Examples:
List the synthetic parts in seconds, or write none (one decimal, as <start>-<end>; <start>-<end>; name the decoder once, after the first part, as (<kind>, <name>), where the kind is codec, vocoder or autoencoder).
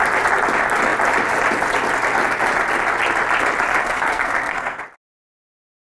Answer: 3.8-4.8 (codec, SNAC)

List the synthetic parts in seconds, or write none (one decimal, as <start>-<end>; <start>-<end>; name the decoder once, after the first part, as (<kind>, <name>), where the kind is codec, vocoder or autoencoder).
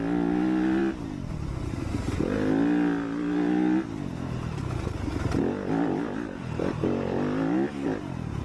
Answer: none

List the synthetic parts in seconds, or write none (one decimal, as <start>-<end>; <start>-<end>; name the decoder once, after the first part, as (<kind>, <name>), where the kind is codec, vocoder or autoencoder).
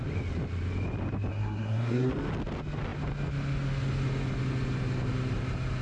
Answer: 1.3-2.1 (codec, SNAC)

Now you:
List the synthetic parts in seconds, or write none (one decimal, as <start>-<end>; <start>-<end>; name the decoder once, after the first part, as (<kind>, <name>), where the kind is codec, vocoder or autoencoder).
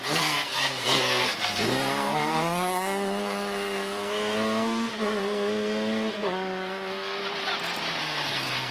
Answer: 0.0-7.2 (codec, SNAC); 8.0-8.7